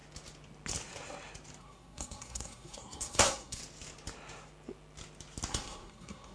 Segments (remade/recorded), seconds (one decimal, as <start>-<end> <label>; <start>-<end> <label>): 0.0-1.6 recorded; 1.6-3.6 remade; 3.6-5.5 recorded; 5.5-6.3 remade